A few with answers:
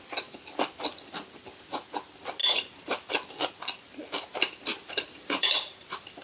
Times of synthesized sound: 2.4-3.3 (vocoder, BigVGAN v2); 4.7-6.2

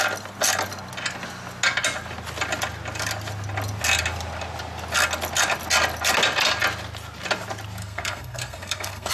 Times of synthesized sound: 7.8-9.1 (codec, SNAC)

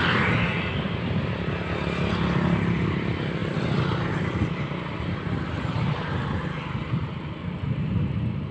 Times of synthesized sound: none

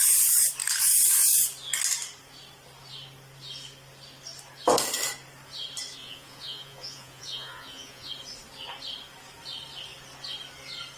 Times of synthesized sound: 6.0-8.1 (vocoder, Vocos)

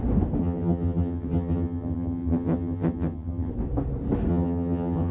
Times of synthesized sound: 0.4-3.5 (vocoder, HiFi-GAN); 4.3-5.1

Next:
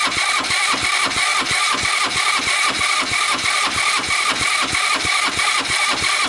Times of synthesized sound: none

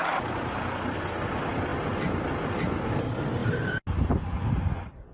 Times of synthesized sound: none